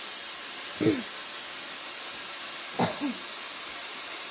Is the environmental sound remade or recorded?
recorded